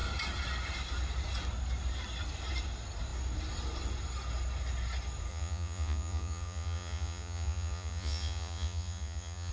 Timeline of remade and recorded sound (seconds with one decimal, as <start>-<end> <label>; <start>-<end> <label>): 0.0-5.3 recorded; 5.3-9.5 remade